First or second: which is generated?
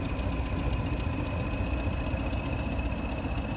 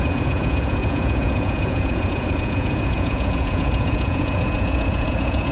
second